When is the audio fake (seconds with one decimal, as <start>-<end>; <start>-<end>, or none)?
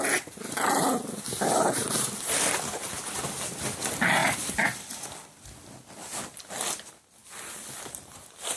1.8-2.9; 4.2-4.8; 7.2-7.8